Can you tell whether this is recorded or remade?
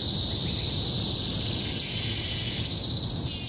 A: recorded